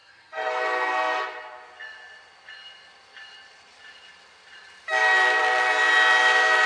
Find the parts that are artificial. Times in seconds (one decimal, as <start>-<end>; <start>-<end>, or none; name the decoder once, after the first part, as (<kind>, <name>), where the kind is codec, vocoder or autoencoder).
0.0-1.2 (codec, SNAC)